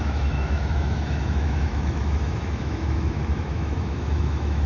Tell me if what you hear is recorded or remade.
remade